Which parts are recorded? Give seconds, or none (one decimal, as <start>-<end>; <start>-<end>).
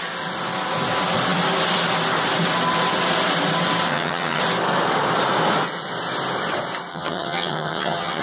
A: 0.0-3.9; 4.4-6.9